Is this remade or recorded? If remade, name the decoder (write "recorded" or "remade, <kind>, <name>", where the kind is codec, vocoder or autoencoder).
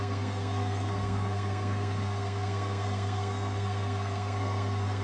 remade, codec, SNAC